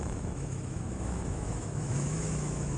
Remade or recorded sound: remade